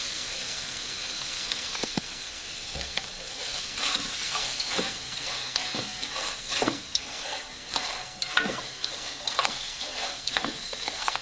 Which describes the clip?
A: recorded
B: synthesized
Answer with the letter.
B